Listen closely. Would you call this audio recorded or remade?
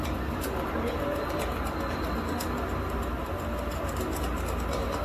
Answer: recorded